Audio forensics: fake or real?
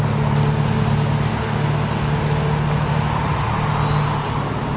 real